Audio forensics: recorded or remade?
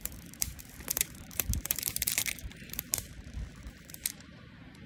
remade